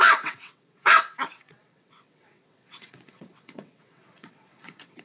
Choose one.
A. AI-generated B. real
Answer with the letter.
A